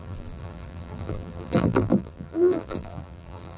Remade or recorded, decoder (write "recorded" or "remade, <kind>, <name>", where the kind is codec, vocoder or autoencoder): remade, vocoder, BigVGAN v2